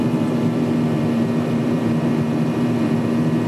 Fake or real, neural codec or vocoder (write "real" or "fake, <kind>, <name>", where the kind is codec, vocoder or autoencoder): fake, vocoder, BigVGAN v2